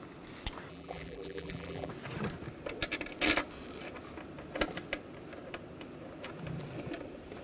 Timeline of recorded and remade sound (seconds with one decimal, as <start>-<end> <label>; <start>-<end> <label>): 0.0-0.7 recorded; 0.7-1.9 remade; 1.9-7.4 recorded